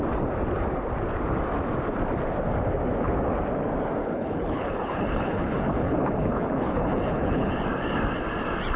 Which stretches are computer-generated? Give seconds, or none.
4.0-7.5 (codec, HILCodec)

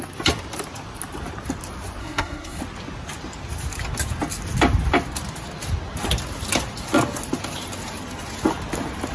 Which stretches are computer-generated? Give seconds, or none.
2.0-2.6 (codec, SNAC)

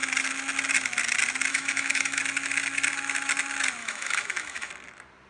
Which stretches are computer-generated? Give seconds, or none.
1.5-2.2 (autoencoder, DAC-VAE); 3.8-4.7

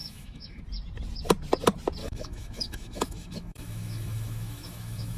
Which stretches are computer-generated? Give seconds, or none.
0.0-0.6 (autoencoder, DAC-VAE); 2.0-5.2